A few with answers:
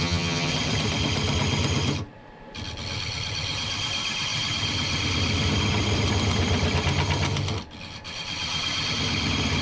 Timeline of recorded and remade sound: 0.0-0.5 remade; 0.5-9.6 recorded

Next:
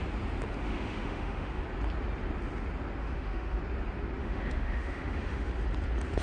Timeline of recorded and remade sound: 0.0-0.6 recorded; 0.6-1.6 remade; 1.6-3.0 recorded; 3.0-3.6 remade; 3.6-4.2 recorded; 4.2-5.5 remade; 5.5-6.2 recorded

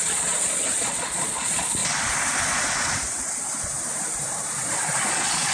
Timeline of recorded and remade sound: 0.0-1.8 remade; 1.8-5.1 recorded; 5.1-5.5 remade

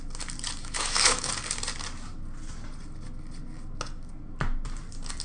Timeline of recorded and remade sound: 0.0-0.6 recorded; 0.6-1.3 remade; 1.3-5.2 recorded

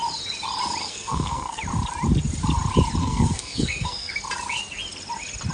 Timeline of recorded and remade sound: 0.0-0.8 recorded; 0.8-1.6 remade; 1.6-3.0 recorded; 3.0-4.1 remade; 4.1-5.5 recorded

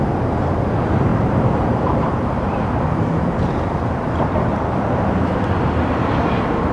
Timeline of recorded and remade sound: 0.0-1.1 recorded; 1.1-5.1 remade; 5.1-6.7 recorded